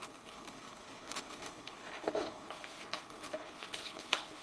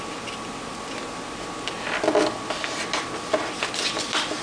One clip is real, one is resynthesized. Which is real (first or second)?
second